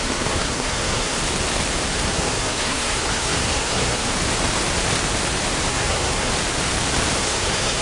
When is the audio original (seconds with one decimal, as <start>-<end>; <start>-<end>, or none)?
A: 1.2-1.9; 4.1-5.7; 6.3-7.2